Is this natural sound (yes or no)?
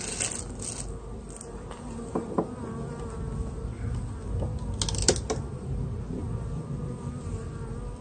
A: yes